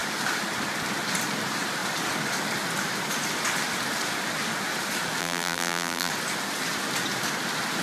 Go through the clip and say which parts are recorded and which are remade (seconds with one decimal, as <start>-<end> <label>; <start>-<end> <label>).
0.0-5.2 recorded; 5.2-6.1 remade; 6.1-7.8 recorded